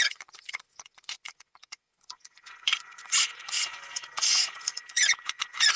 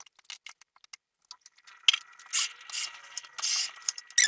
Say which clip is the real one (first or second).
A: second